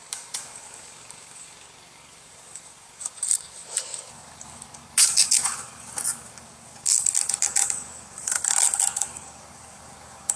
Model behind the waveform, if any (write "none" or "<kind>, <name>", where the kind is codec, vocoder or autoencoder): codec, DAC